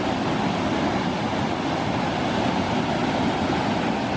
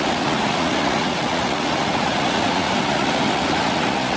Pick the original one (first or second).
first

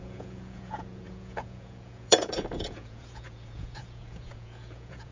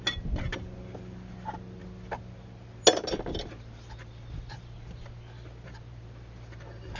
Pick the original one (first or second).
second